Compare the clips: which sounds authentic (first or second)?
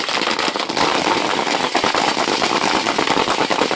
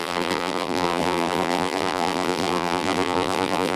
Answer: first